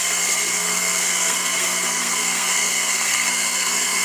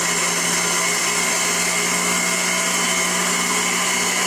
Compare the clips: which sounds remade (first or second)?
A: first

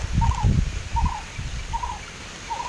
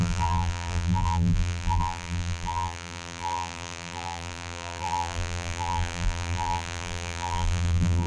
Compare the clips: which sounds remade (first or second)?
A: second